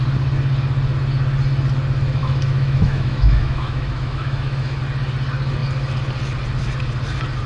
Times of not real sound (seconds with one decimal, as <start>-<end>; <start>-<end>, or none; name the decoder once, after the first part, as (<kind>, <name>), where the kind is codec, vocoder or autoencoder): 2.2-4.8 (autoencoder, DAC-VAE)